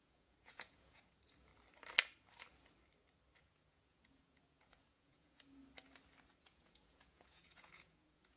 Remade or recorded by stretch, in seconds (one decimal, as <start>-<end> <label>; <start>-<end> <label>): 0.0-1.5 remade; 1.5-3.4 recorded; 3.4-5.6 remade; 5.6-6.4 recorded; 6.4-8.4 remade